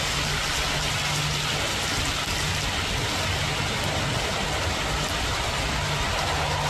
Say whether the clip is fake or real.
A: real